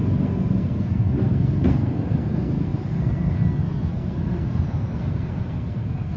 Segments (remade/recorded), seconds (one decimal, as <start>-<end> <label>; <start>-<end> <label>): 0.0-6.2 remade